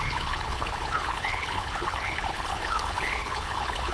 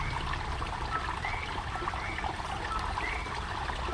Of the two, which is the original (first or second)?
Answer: second